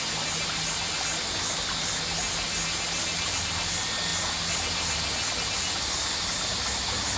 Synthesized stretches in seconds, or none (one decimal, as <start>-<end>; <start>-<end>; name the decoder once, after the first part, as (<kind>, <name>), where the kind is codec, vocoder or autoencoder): none